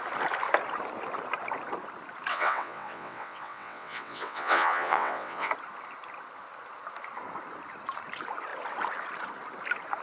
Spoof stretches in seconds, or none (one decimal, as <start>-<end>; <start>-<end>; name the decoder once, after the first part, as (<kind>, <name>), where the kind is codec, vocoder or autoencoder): 2.3-5.5 (vocoder, WaveNeXt)